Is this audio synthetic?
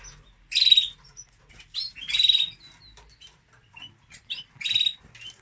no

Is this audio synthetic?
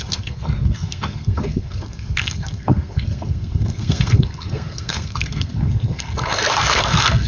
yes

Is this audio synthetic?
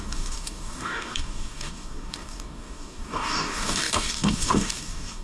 yes